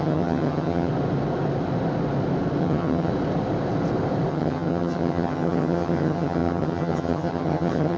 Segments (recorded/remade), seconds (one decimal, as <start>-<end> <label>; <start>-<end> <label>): 0.0-0.9 remade; 0.9-2.6 recorded; 2.6-3.1 remade; 3.1-4.3 recorded; 4.3-8.0 remade